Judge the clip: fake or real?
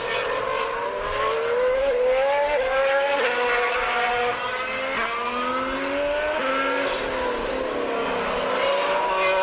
real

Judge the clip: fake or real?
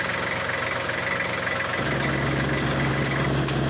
real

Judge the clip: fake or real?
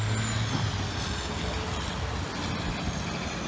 real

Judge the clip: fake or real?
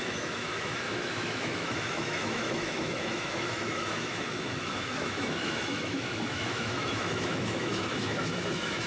fake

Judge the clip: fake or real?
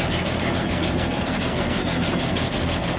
fake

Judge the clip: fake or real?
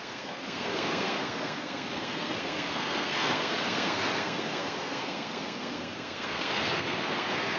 fake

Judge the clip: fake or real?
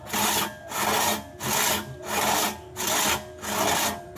real